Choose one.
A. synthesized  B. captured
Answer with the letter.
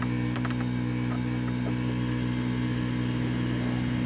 B